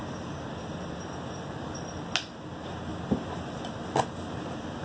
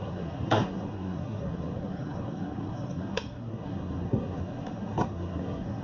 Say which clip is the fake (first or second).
second